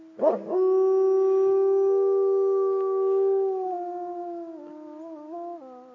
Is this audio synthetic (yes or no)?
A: no